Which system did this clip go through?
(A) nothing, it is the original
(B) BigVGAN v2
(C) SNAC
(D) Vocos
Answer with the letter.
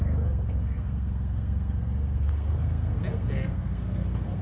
C